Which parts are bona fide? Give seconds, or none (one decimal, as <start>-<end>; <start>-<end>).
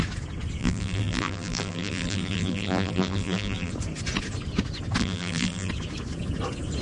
0.0-0.6; 3.7-5.0; 5.7-6.8